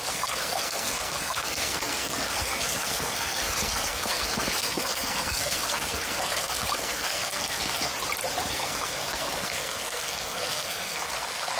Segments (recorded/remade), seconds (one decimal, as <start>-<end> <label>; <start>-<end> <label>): 0.0-7.9 remade; 7.9-8.5 recorded; 8.5-11.6 remade